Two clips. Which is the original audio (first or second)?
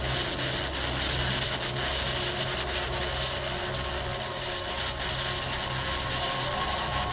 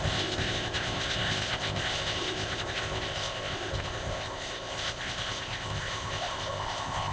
first